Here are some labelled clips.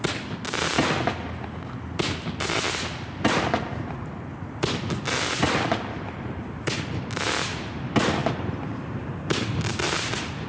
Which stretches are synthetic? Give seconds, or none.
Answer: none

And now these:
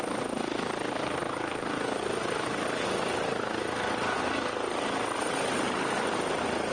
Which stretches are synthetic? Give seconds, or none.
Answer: none

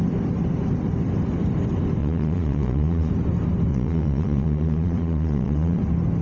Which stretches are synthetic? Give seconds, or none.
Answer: 2.0-3.1 (vocoder, Vocos); 3.7-5.8

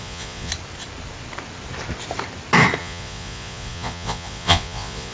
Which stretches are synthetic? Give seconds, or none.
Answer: 0.0-0.5 (vocoder, Vocos); 2.8-5.1

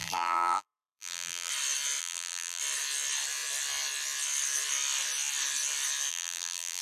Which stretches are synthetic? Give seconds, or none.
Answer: 0.0-1.5 (vocoder, BigVGAN v2); 2.0-2.6; 6.1-6.8

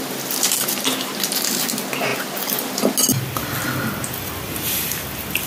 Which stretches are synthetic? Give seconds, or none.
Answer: none

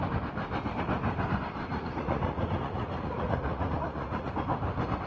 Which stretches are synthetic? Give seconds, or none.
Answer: 1.7-4.3 (vocoder, Vocos)

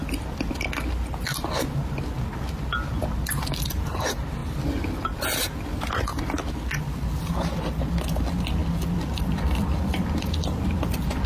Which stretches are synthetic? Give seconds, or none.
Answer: none